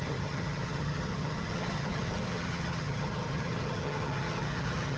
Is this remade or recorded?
remade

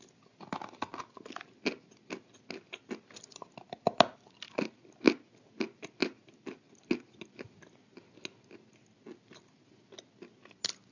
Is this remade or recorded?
recorded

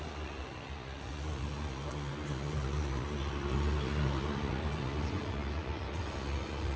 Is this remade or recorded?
remade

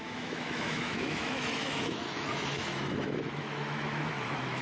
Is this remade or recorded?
remade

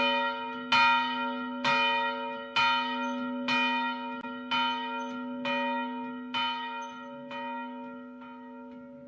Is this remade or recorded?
recorded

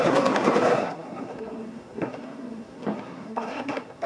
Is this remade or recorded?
remade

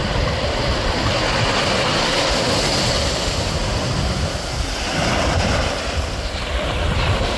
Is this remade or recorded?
recorded